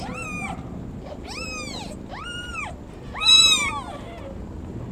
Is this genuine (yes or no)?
yes